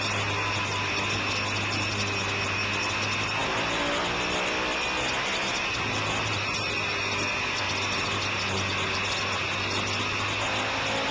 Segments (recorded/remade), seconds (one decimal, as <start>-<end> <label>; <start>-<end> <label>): 0.0-11.1 recorded